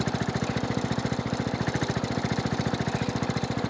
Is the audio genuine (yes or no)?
yes